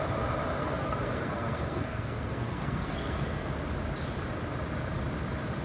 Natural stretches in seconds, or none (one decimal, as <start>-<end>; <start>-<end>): 0.0-0.6; 3.5-5.6